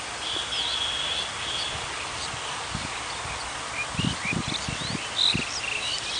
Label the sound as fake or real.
real